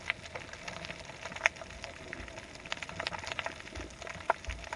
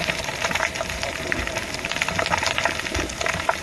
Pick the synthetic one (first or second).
second